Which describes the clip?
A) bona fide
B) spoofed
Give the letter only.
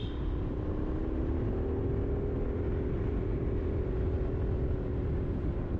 A